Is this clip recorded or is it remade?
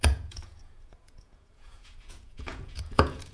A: remade